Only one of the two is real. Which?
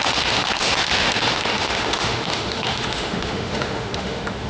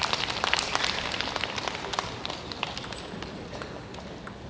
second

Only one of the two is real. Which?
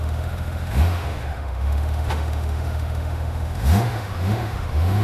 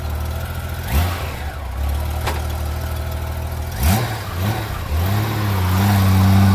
second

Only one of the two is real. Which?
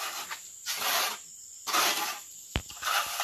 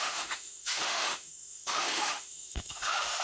first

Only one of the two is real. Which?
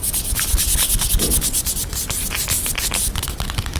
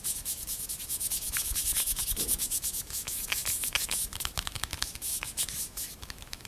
first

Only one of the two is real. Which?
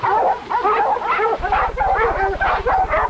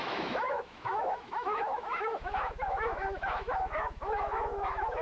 first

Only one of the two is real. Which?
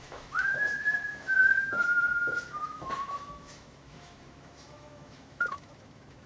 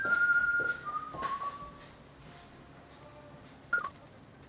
second